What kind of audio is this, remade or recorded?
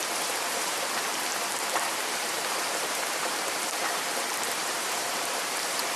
remade